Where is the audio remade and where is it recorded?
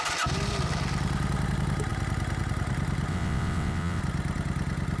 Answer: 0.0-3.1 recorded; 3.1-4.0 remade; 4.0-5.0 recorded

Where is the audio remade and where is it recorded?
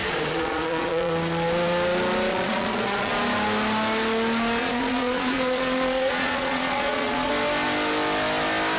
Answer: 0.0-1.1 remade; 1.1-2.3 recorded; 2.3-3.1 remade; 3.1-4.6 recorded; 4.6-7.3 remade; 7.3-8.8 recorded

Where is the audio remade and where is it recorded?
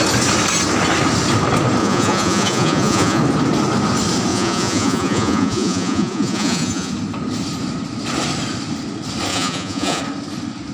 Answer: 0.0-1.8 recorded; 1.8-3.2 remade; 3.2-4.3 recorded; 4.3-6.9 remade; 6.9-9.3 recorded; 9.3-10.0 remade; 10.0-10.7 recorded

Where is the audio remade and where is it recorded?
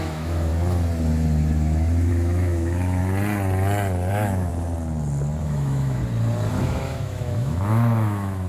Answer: 0.0-0.5 remade; 0.5-2.1 recorded; 2.1-3.0 remade; 3.0-4.1 recorded; 4.1-4.5 remade; 4.5-5.4 recorded; 5.4-6.0 remade; 6.0-6.5 recorded; 6.5-8.5 remade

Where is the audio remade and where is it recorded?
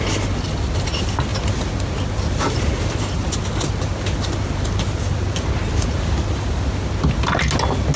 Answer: 0.0-8.0 recorded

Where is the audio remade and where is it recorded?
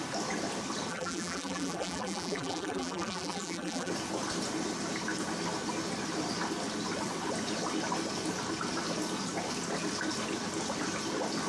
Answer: 0.0-0.9 recorded; 0.9-3.9 remade; 3.9-11.5 recorded